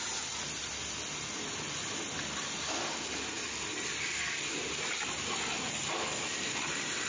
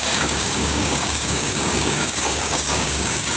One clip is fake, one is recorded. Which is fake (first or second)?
second